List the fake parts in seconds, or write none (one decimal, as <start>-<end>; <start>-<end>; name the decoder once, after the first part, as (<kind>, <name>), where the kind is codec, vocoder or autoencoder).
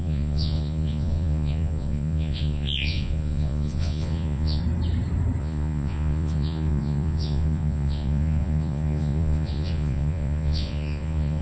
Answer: 0.0-4.6 (vocoder, Vocos); 5.4-11.4